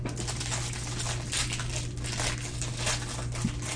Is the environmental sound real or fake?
real